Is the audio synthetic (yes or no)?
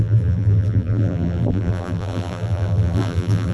yes